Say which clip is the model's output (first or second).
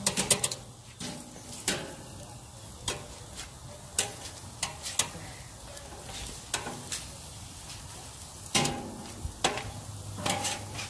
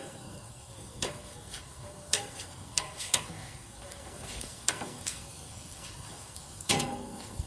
second